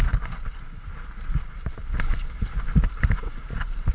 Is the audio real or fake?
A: real